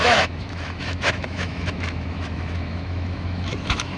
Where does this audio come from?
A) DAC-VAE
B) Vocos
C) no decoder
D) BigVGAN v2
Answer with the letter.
A